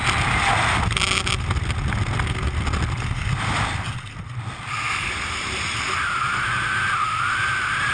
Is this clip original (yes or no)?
yes